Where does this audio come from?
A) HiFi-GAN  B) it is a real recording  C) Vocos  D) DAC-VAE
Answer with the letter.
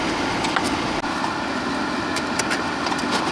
B